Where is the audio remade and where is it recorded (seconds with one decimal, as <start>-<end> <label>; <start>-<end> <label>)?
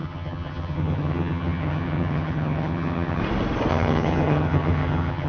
0.0-3.2 remade; 3.2-3.7 recorded; 3.7-5.3 remade